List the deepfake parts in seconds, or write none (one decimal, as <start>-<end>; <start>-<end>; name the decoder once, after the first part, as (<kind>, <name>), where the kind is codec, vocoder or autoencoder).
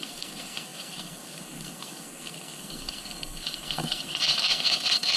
0.0-5.2 (codec, SNAC)